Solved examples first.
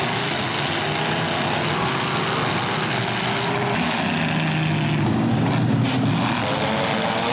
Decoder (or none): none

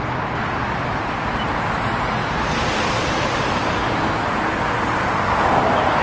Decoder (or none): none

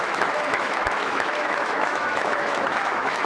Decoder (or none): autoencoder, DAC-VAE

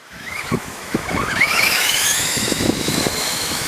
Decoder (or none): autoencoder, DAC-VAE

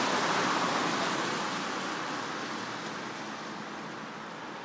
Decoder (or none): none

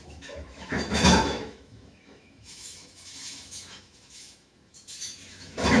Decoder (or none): autoencoder, DAC-VAE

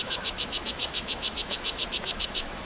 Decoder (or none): autoencoder, DAC-VAE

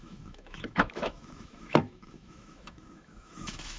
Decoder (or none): autoencoder, DAC-VAE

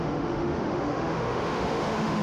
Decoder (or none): autoencoder, DAC-VAE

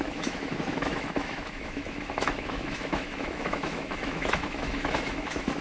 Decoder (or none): autoencoder, DAC-VAE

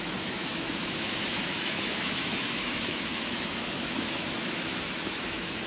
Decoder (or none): autoencoder, DAC-VAE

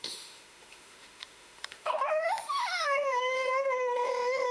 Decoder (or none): autoencoder, DAC-VAE